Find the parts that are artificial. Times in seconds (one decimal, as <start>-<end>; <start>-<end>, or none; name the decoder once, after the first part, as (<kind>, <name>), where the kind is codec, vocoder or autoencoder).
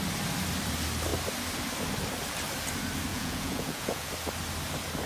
3.1-4.1 (vocoder, Vocos)